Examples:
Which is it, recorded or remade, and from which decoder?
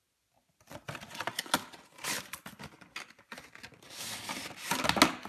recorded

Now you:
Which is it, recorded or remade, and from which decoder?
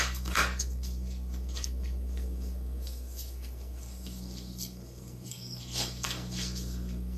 remade, codec, SNAC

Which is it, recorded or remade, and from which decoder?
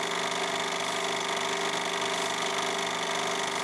recorded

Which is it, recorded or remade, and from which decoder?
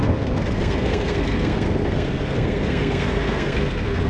remade, codec, SNAC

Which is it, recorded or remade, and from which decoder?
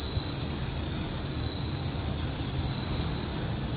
recorded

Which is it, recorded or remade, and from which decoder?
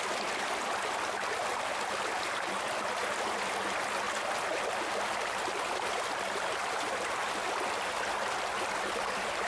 recorded